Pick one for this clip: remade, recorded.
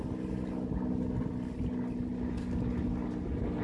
recorded